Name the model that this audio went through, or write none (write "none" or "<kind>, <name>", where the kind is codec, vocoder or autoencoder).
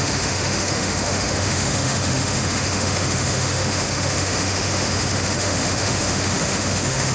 autoencoder, DAC-VAE